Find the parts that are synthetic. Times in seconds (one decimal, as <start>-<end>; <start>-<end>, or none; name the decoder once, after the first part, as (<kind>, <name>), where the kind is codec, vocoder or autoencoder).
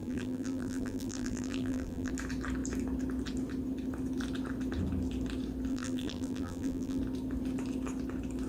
0.0-2.1 (vocoder, BigVGAN v2); 5.7-7.0